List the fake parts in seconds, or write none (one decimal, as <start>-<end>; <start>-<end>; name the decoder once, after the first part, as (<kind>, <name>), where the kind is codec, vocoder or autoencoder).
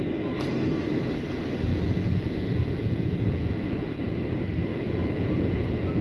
1.7-4.0 (vocoder, Vocos); 4.7-6.0